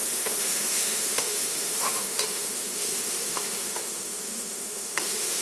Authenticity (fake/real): fake